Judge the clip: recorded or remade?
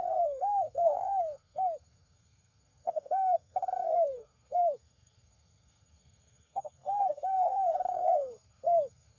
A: remade